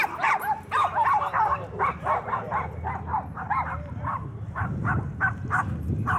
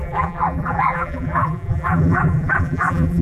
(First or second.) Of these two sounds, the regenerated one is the second